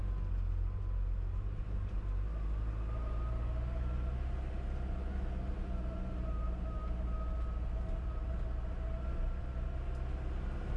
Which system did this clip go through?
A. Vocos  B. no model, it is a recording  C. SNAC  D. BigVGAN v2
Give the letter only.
B